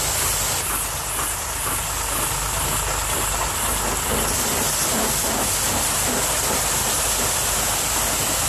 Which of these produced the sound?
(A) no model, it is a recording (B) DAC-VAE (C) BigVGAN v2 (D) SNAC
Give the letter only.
A